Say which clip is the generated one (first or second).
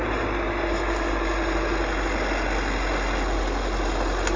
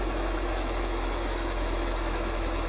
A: second